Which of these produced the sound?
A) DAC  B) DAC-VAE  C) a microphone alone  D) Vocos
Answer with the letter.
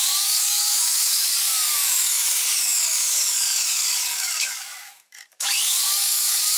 A